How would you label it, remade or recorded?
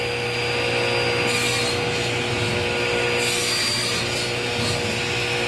recorded